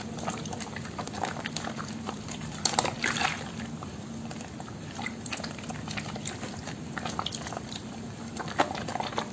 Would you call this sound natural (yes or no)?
no